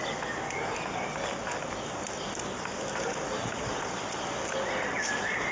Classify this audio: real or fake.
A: real